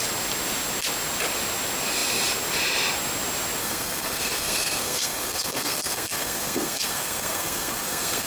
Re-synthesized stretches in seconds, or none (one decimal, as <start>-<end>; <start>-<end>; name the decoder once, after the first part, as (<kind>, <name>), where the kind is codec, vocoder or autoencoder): 3.6-8.3 (codec, SNAC)